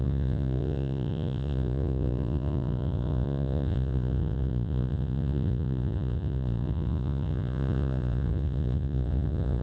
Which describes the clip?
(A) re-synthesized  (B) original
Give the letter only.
A